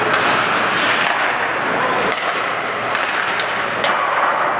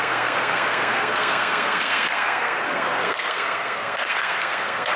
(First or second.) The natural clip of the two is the first